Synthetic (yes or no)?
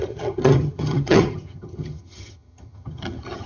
yes